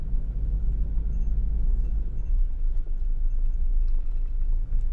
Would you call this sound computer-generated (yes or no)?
no